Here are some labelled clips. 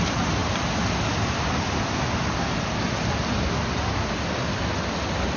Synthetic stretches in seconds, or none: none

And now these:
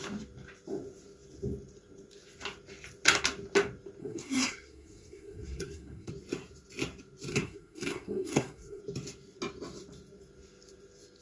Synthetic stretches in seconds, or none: 4.0-6.1 (codec, SNAC); 7.3-8.8

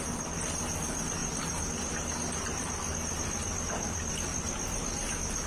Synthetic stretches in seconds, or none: 1.2-1.7 (vocoder, BigVGAN v2)

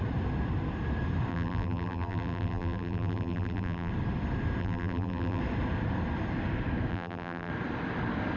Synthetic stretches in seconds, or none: 1.3-3.9 (vocoder, BigVGAN v2); 4.6-5.4; 6.9-7.5

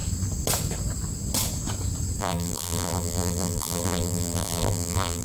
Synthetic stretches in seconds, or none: 2.2-5.2 (vocoder, BigVGAN v2)

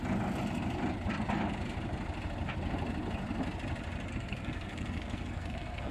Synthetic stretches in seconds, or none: 4.1-5.9 (codec, SNAC)

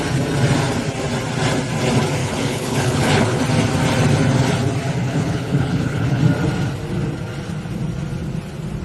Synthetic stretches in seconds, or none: 2.2-3.4 (codec, HILCodec); 5.0-6.2

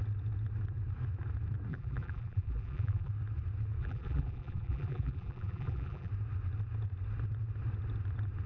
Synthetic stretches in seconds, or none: 1.7-3.1 (vocoder, BigVGAN v2); 3.8-6.1